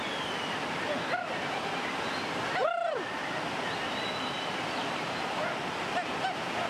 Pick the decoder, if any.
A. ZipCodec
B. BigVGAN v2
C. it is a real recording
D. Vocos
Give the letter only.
B